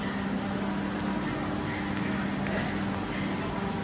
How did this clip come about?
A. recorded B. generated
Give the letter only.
A